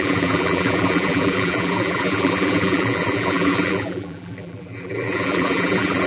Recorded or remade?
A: remade